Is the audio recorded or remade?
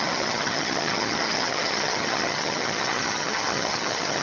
remade